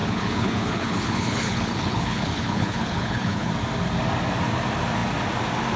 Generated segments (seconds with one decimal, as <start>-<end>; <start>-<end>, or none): 0.0-3.5